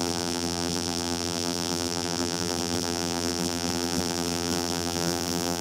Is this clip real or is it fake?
fake